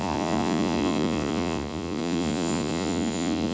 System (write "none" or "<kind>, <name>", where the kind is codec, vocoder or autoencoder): vocoder, Vocos